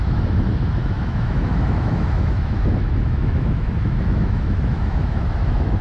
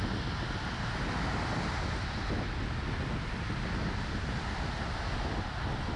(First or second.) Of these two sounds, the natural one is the second